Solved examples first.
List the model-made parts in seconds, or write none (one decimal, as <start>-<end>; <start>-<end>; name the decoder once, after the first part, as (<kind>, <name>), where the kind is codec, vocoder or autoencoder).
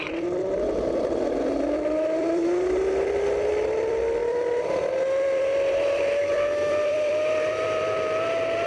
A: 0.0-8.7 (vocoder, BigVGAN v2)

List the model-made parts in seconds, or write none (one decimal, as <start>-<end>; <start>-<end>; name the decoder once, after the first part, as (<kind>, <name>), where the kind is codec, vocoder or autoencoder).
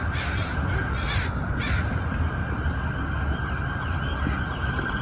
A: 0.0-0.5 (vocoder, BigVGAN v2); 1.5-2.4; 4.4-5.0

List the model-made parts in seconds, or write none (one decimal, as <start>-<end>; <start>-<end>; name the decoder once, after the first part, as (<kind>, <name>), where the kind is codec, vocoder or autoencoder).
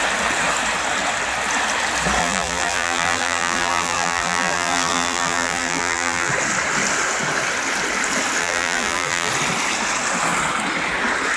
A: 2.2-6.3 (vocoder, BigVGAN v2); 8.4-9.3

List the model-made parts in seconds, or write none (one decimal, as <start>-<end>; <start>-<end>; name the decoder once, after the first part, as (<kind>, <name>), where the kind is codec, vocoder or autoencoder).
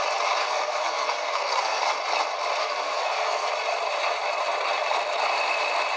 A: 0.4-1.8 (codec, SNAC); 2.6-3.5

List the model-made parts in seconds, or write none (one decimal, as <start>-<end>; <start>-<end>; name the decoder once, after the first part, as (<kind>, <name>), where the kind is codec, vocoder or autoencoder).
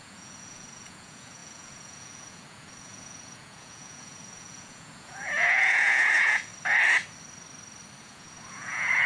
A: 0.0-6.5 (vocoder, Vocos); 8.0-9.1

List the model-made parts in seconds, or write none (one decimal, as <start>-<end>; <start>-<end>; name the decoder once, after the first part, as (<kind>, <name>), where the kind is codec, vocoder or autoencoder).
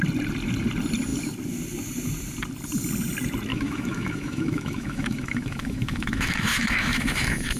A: 3.5-7.6 (autoencoder, DAC-VAE)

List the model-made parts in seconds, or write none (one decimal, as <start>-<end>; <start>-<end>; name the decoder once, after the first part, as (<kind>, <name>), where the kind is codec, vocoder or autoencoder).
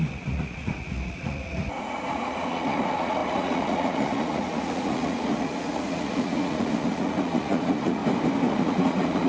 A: 0.0-8.0 (vocoder, Vocos); 8.5-9.3